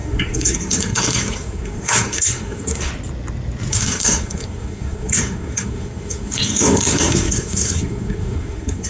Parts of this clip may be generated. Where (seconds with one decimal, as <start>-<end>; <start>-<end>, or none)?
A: 0.0-2.9; 3.7-8.9